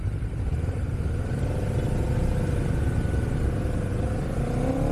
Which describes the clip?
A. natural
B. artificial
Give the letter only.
A